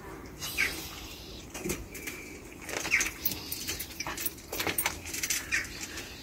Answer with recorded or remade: remade